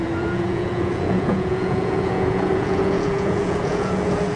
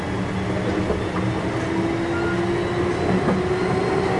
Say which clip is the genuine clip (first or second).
second